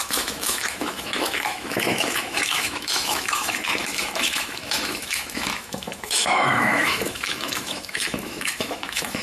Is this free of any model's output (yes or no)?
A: no